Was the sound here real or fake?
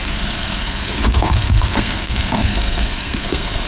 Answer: fake